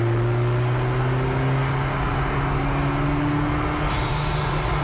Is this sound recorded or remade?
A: recorded